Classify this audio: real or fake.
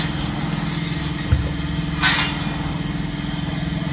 real